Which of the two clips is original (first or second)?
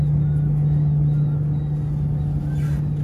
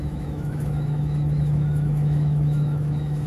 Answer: first